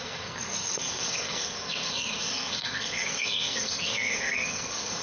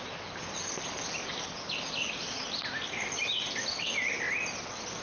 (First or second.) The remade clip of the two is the first